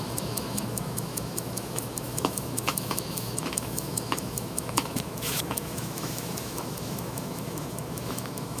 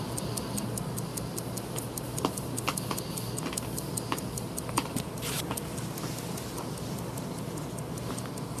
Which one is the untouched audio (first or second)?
second